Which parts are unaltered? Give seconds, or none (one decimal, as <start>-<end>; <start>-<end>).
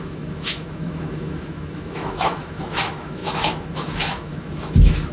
none